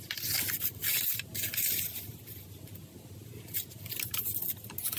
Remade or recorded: recorded